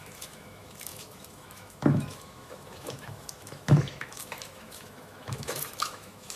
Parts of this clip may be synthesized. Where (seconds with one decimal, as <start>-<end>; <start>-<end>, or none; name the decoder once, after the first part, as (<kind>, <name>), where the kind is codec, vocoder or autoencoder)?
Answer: 0.0-6.4 (autoencoder, DAC-VAE)